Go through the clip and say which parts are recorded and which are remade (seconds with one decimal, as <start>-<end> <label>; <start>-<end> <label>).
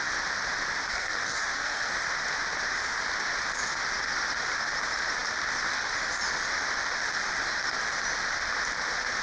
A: 0.0-0.9 recorded; 0.9-1.9 remade; 1.9-9.2 recorded